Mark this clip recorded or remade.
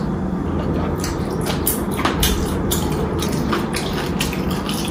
remade